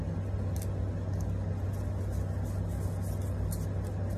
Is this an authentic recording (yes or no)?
yes